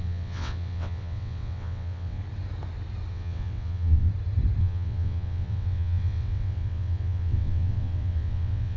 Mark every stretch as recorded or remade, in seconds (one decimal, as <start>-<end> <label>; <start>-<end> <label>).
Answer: 0.0-2.2 remade; 2.2-3.1 recorded; 3.1-4.1 remade; 4.1-4.6 recorded; 4.6-8.8 remade